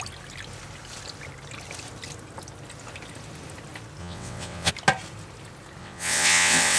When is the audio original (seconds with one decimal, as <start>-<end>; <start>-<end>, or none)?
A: 0.0-4.0; 4.7-5.8